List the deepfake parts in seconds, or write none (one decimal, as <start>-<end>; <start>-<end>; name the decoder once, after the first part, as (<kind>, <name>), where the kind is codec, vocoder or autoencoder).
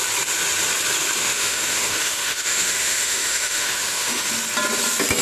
1.2-4.3 (autoencoder, DAC-VAE)